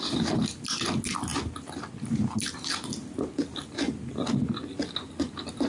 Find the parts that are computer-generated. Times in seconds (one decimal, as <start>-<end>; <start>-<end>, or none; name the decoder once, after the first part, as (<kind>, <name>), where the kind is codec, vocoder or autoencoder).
none